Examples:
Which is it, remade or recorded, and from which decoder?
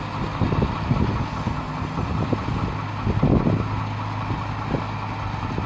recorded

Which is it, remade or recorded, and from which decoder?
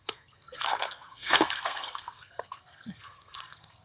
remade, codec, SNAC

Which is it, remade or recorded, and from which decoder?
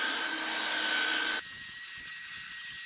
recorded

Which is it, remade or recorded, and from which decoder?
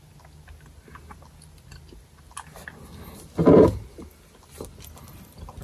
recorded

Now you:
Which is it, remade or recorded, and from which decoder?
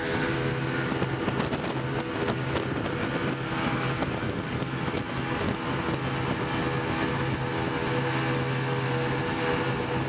recorded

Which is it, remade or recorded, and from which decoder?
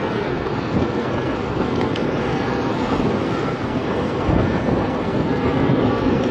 remade, codec, SNAC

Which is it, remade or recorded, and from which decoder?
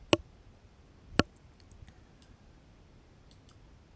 recorded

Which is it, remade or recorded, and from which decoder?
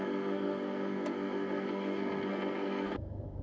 remade, codec, SNAC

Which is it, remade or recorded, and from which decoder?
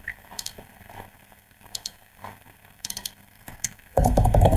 remade, codec, SNAC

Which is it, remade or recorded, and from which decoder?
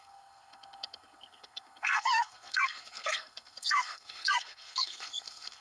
remade, codec, SNAC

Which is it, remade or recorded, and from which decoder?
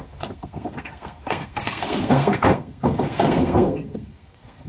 remade, codec, SNAC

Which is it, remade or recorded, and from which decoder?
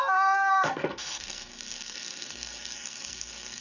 remade, codec, SNAC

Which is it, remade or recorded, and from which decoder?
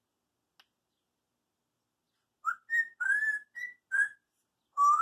recorded